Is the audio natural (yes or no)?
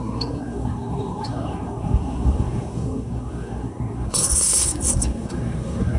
no